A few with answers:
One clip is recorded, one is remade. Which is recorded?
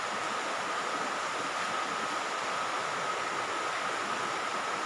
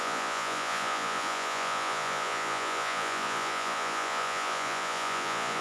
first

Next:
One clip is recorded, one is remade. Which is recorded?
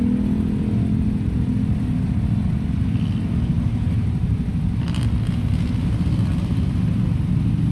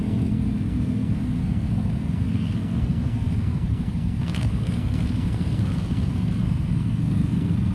first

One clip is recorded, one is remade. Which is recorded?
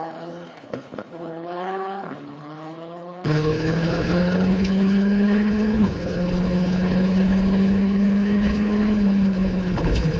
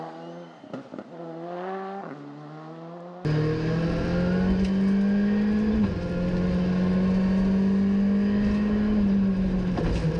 second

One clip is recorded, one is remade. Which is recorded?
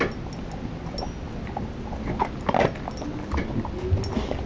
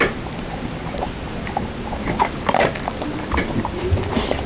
first